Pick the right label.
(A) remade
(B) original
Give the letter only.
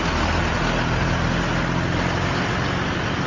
B